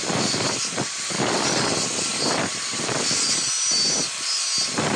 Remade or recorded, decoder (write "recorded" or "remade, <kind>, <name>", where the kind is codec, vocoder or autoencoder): recorded